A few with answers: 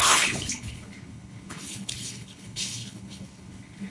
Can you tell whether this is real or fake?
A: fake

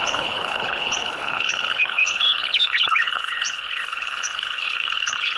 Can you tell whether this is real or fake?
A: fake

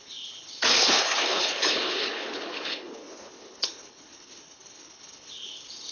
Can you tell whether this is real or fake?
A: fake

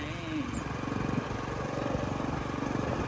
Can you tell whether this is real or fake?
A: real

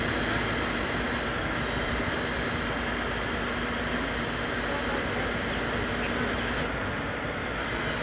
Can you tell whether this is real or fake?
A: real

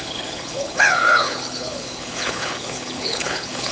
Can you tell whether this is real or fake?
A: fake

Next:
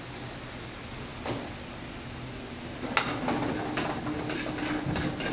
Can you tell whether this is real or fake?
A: real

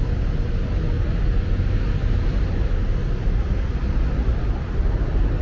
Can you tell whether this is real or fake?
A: real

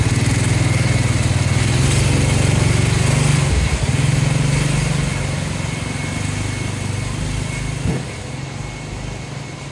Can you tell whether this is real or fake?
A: real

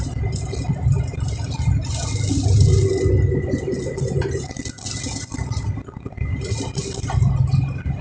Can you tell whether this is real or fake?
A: real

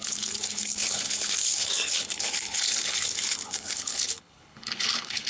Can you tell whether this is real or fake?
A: fake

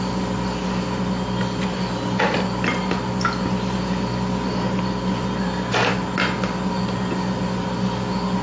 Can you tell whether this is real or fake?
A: real